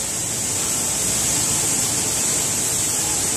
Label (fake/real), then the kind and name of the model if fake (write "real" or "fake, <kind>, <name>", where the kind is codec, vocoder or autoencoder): real